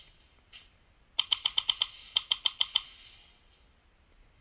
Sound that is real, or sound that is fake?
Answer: real